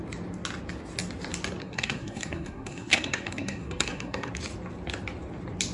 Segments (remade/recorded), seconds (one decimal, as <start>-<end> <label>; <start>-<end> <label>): 0.0-1.6 recorded; 1.6-4.3 remade; 4.3-5.7 recorded